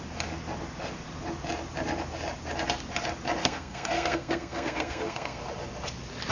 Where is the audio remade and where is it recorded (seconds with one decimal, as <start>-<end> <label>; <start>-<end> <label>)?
0.0-3.4 recorded; 3.4-5.4 remade; 5.4-6.3 recorded